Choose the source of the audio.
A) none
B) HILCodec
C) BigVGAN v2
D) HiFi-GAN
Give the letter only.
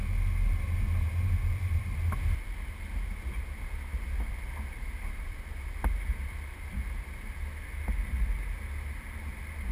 A